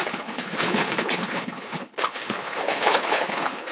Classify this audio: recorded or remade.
remade